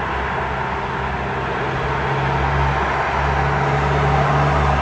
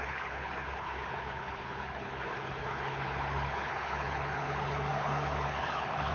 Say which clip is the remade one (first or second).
second